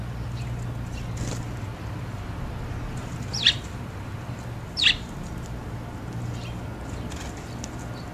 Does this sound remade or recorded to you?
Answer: recorded